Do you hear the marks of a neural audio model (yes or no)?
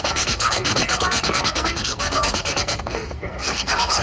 yes